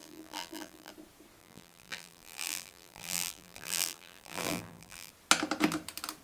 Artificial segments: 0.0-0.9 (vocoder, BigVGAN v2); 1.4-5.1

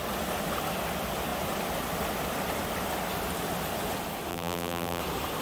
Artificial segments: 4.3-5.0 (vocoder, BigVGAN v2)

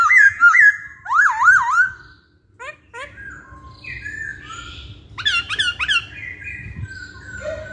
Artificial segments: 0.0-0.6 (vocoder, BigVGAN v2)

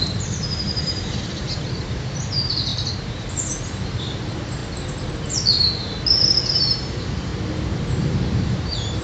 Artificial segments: 0.0-2.7 (vocoder, BigVGAN v2); 3.2-4.6; 6.5-7.3; 8.0-9.0